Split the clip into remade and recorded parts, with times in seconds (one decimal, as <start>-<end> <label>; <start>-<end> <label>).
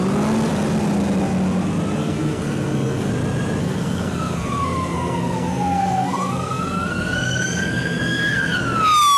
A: 0.0-2.0 recorded; 2.0-3.1 remade; 3.1-3.6 recorded; 3.6-8.6 remade; 8.6-9.2 recorded